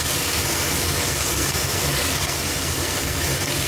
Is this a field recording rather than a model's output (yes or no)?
no